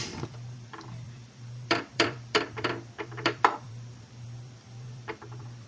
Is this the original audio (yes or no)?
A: no